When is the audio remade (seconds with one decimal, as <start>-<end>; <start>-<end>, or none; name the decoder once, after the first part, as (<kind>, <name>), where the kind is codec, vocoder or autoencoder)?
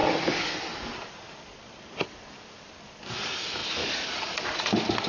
none